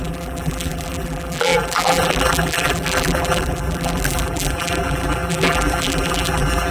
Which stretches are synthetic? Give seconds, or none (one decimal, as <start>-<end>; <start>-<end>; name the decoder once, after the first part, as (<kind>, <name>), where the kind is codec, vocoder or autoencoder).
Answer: 0.0-6.7 (vocoder, BigVGAN v2)